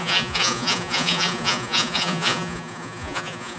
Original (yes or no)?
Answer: no